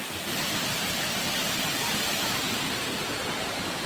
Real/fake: real